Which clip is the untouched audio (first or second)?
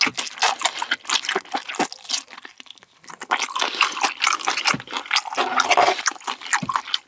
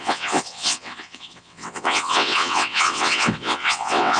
first